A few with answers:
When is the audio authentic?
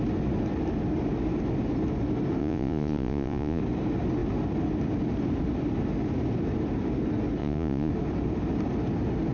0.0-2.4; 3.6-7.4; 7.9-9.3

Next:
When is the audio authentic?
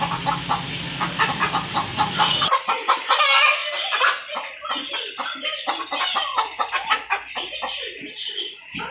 0.0-1.9; 2.6-8.9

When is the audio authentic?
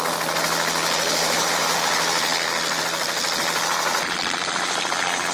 0.0-5.3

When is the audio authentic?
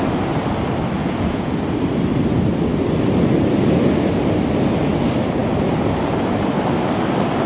0.0-1.0; 1.5-7.5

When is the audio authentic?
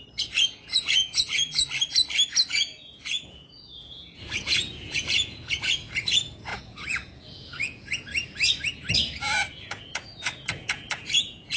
1.6-2.5; 8.1-8.9